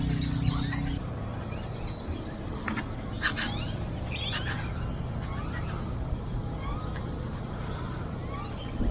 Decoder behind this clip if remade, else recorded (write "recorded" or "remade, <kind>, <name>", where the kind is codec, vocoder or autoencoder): recorded